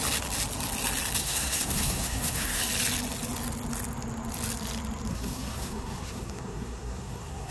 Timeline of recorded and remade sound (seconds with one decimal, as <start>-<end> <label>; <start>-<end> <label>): 0.0-1.2 recorded; 1.2-2.6 remade; 2.6-5.1 recorded; 5.1-7.5 remade